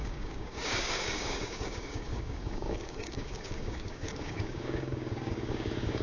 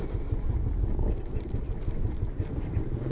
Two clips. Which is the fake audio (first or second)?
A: first